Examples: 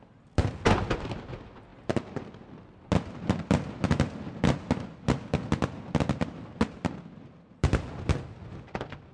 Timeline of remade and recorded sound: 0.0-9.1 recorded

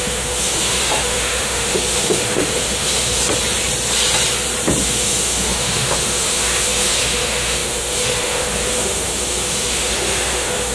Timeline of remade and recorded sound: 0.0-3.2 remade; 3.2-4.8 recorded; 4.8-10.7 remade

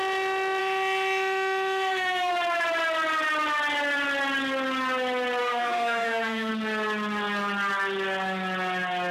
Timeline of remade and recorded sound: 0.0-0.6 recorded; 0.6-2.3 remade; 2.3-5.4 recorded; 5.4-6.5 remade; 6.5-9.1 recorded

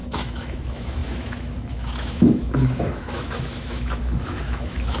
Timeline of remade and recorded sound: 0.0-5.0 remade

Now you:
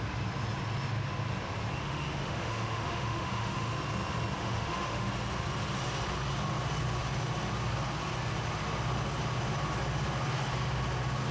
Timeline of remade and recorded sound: 0.0-1.8 recorded; 1.8-3.7 remade; 3.7-4.4 recorded; 4.4-5.1 remade; 5.1-11.3 recorded

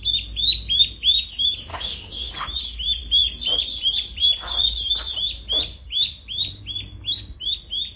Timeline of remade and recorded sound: 0.0-1.7 recorded; 1.7-2.3 remade; 2.3-8.0 recorded

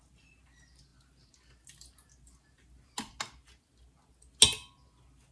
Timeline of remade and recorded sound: 0.0-5.3 recorded

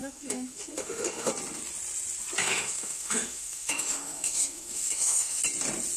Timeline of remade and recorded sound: 0.0-1.3 remade; 1.3-2.4 recorded; 2.4-5.4 remade; 5.4-6.0 recorded